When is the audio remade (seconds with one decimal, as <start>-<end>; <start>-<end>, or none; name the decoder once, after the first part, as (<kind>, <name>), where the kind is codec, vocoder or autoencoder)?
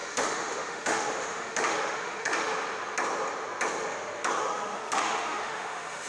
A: 0.0-2.5 (autoencoder, DAC-VAE); 4.4-6.1